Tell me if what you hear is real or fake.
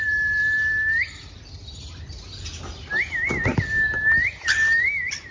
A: real